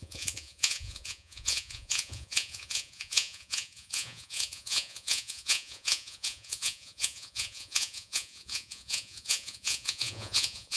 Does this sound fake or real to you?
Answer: fake